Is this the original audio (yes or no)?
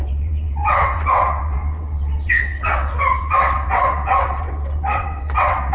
no